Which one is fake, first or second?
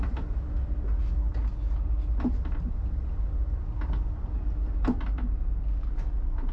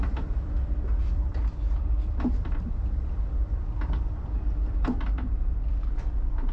second